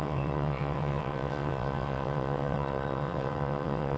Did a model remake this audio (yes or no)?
yes